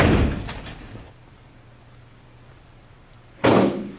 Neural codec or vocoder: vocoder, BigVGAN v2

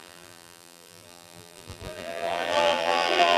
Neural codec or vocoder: vocoder, BigVGAN v2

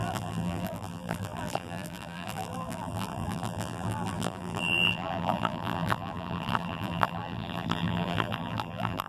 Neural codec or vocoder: vocoder, BigVGAN v2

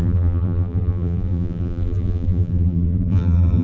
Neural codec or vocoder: vocoder, BigVGAN v2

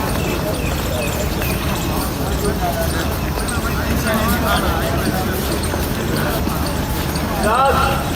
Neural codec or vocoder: none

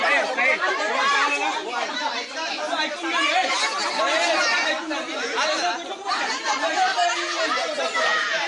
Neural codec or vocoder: vocoder, BigVGAN v2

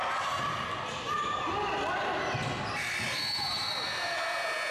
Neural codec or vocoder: none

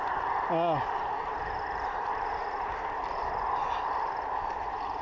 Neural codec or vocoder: none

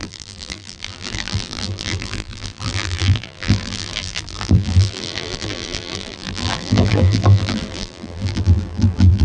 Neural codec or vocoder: vocoder, BigVGAN v2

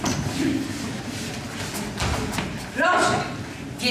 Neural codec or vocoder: none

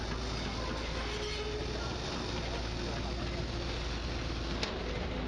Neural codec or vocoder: none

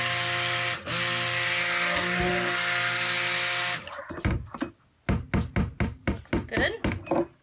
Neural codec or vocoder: none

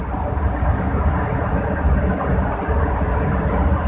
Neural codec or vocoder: none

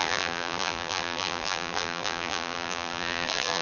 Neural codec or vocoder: vocoder, BigVGAN v2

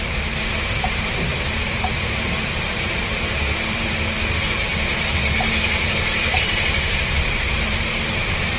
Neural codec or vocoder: vocoder, BigVGAN v2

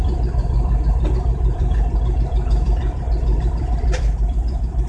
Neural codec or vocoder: vocoder, BigVGAN v2